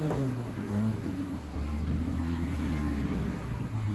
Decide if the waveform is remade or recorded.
remade